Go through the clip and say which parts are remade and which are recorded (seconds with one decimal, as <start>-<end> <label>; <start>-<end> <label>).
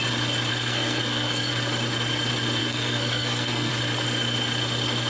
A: 0.0-0.5 recorded; 0.5-1.5 remade; 1.5-2.6 recorded; 2.6-3.7 remade; 3.7-5.1 recorded